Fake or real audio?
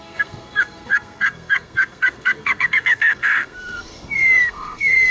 fake